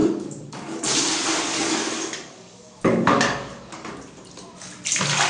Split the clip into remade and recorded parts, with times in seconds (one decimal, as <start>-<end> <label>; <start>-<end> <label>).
0.0-0.8 remade; 0.8-1.5 recorded; 1.5-4.0 remade; 4.0-5.3 recorded